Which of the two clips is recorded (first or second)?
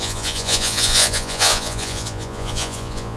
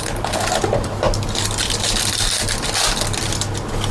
second